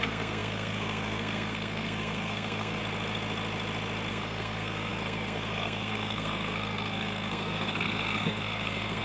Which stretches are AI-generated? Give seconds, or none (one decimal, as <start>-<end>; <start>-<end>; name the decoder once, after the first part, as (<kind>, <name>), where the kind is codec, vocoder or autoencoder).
0.0-2.8 (codec, SNAC); 4.1-9.0